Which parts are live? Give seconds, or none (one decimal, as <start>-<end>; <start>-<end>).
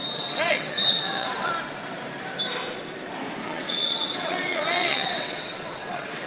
1.5-3.4